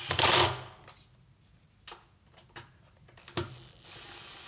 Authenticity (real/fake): real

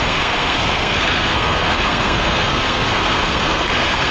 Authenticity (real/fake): fake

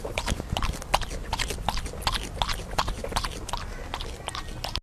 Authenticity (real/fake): real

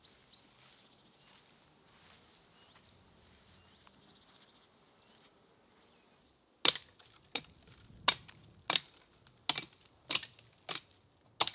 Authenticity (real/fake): real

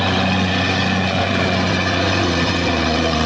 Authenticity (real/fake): fake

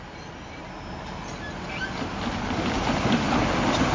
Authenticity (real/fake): real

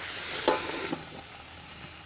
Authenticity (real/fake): real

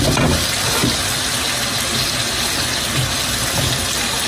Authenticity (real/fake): real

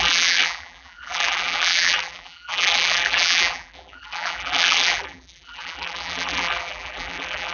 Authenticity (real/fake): fake